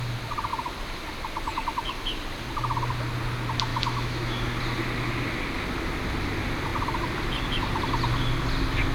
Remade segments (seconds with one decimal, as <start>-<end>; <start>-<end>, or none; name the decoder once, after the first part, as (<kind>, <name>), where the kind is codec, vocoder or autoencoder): 3.7-4.6 (autoencoder, DAC-VAE)